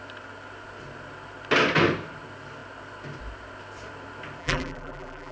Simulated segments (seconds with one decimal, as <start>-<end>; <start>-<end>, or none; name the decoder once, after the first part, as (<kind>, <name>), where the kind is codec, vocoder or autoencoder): 4.4-5.3 (vocoder, BigVGAN v2)